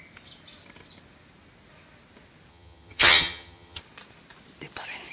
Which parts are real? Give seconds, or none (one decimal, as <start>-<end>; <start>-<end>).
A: 0.0-2.5; 3.8-5.1